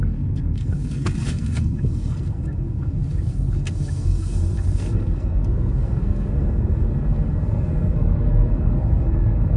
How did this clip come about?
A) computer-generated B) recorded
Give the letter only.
A